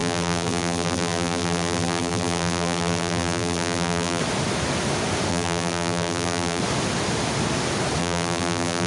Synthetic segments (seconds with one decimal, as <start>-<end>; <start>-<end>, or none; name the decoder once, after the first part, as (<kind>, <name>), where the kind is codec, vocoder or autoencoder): 0.0-4.2 (vocoder, BigVGAN v2); 5.3-6.6; 8.0-8.9